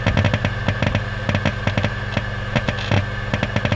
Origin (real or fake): real